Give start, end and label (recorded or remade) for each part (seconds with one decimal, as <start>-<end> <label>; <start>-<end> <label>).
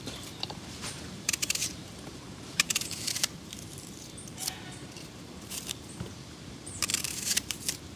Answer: 0.0-8.0 remade